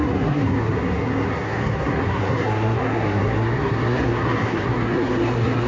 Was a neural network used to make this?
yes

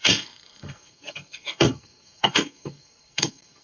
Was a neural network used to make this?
yes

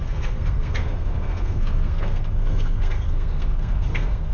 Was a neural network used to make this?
yes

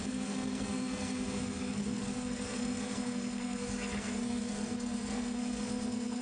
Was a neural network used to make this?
yes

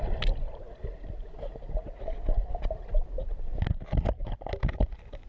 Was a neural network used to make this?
no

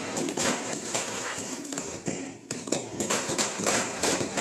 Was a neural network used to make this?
yes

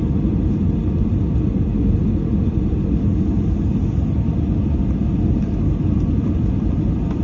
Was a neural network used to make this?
no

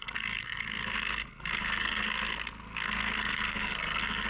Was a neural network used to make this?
yes